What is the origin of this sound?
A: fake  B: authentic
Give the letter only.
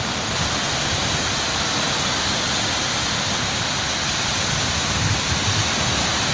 B